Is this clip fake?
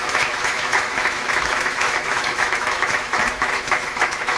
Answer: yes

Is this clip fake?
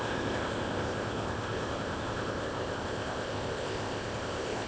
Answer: yes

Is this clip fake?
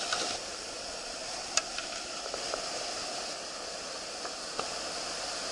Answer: no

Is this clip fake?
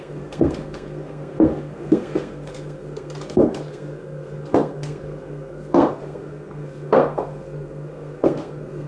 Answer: yes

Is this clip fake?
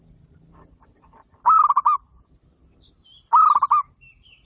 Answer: no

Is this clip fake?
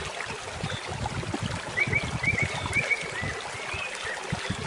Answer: no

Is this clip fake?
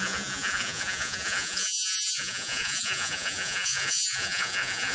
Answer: yes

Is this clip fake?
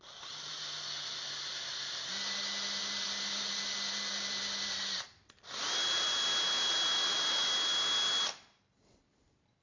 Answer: no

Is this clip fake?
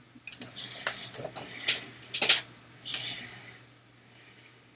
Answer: no